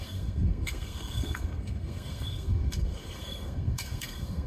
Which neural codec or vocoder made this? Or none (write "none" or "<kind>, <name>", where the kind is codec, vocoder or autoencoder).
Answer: codec, SNAC